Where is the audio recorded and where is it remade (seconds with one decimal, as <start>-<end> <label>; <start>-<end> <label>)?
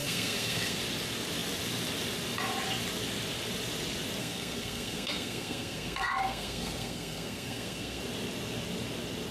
0.0-0.8 remade; 0.8-4.2 recorded; 4.2-8.0 remade; 8.0-9.3 recorded